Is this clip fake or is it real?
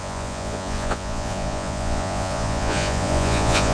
fake